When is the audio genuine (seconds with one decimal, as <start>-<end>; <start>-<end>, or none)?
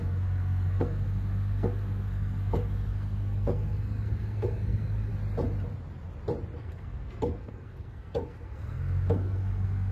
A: 5.1-6.6